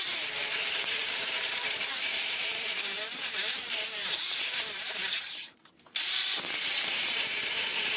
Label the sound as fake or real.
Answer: fake